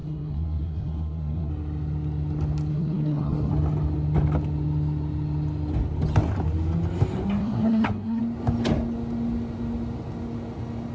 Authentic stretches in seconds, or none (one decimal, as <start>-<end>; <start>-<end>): 1.5-2.7; 3.5-7.4; 8.2-10.9